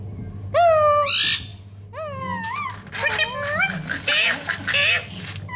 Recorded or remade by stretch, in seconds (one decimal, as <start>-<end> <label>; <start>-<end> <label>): 0.0-5.6 recorded